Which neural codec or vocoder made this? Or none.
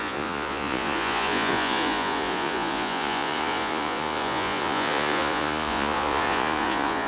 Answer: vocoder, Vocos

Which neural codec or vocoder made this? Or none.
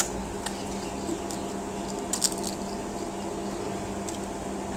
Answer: none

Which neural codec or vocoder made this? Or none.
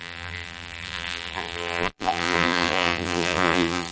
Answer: vocoder, BigVGAN v2